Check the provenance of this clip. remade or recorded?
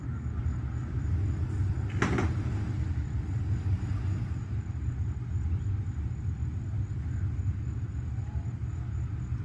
recorded